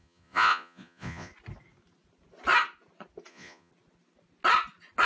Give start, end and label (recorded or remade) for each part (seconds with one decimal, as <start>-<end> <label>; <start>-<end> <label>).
0.0-1.3 remade; 1.3-3.3 recorded; 3.3-3.7 remade; 3.7-5.1 recorded